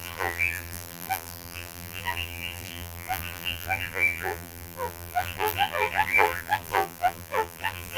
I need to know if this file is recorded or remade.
remade